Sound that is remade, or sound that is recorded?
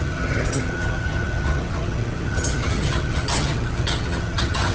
remade